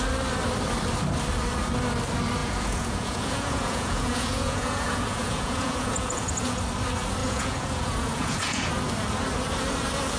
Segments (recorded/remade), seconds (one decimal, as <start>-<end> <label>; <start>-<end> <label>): 0.0-2.4 recorded; 2.4-6.6 remade; 6.6-7.2 recorded; 7.2-8.7 remade; 8.7-10.2 recorded